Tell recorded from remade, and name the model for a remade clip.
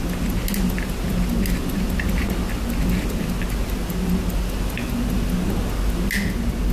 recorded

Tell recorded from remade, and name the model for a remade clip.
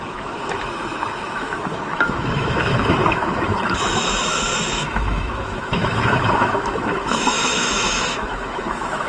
remade, autoencoder, DAC-VAE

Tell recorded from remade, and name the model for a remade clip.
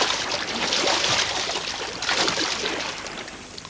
recorded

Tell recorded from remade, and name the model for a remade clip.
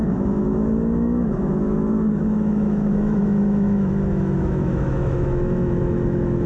remade, autoencoder, DAC-VAE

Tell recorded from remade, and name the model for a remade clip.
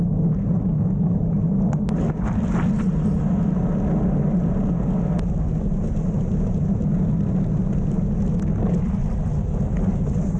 recorded